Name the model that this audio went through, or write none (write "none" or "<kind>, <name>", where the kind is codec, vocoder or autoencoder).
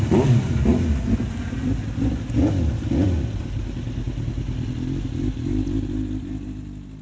none